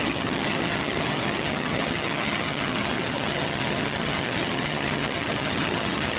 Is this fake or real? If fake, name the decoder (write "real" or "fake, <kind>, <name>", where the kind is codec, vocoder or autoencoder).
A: fake, vocoder, HiFi-GAN